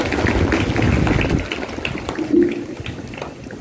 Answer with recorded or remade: recorded